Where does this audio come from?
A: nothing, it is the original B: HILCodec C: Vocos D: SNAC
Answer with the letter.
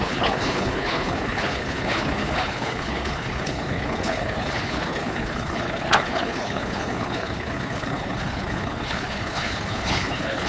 B